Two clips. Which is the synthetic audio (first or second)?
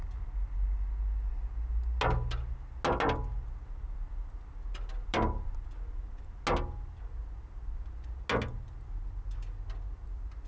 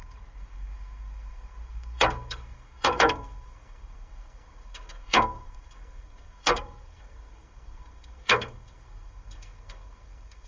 second